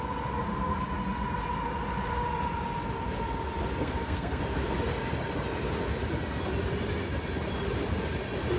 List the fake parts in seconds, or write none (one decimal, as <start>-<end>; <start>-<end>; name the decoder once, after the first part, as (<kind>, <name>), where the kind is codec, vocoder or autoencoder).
3.8-4.4 (codec, SNAC)